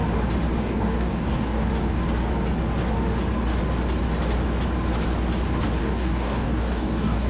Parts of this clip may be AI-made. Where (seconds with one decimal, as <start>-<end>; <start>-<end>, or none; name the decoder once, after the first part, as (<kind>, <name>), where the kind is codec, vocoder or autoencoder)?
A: 0.6-1.7 (codec, DAC); 5.8-7.3